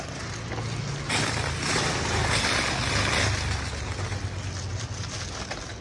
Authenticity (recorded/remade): recorded